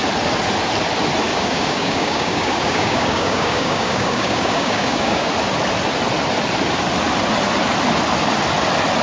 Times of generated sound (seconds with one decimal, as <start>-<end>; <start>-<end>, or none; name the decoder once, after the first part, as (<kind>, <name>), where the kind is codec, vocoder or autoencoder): 1.3-5.3 (codec, DAC)